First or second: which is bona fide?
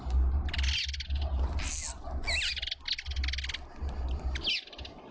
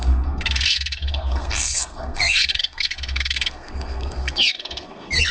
first